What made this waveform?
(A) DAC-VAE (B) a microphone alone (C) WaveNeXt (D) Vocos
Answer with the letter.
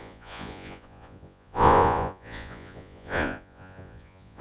D